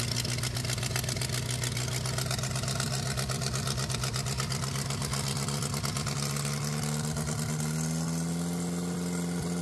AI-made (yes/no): no